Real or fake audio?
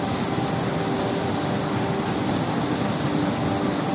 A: real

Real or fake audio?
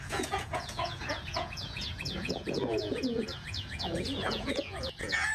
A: fake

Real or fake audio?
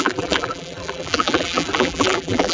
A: fake